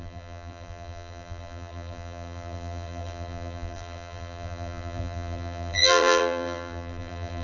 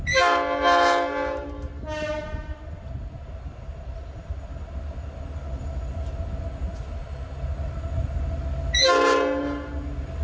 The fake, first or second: first